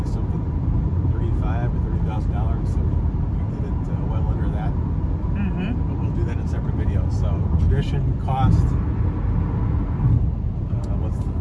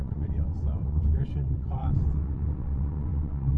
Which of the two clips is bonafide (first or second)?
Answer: first